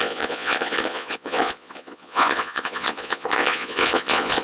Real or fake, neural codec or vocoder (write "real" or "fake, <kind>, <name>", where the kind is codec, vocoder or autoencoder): fake, vocoder, Vocos